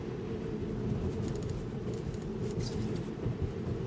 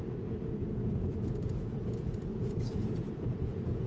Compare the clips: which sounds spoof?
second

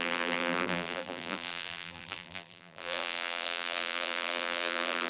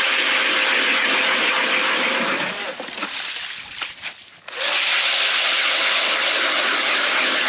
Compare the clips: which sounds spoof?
first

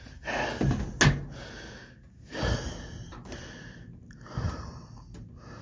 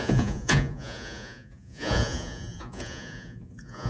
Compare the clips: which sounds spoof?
second